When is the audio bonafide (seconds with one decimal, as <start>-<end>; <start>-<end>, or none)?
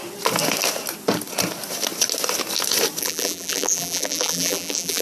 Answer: 0.0-3.0